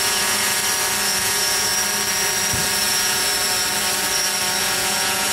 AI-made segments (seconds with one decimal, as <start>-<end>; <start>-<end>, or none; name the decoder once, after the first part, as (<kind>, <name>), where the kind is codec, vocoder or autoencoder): 0.0-0.6 (vocoder, Vocos); 1.2-1.7; 2.7-3.3; 4.6-5.3